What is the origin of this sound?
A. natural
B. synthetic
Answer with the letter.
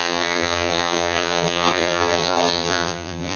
B